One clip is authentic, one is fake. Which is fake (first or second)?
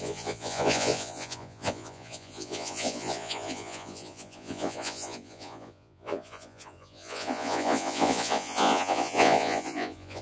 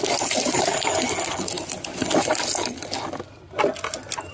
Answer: first